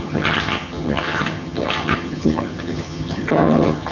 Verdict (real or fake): fake